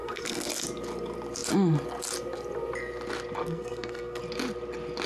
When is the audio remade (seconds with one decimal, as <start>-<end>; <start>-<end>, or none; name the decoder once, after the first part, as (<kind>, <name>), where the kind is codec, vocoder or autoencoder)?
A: 0.0-0.5 (codec, SNAC); 3.4-4.2